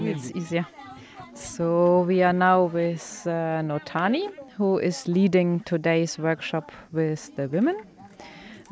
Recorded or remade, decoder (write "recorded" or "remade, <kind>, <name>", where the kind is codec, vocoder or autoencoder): recorded